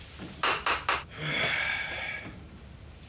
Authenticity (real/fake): fake